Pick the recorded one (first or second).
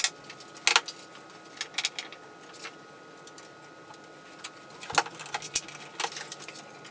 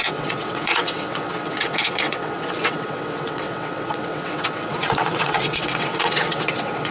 first